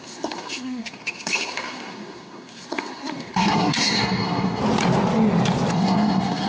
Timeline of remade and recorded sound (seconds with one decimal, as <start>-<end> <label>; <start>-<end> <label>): 0.0-4.6 remade; 4.6-5.7 recorded; 5.7-6.5 remade